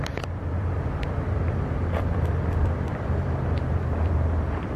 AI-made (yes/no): yes